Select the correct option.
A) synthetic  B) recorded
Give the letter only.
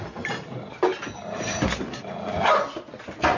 B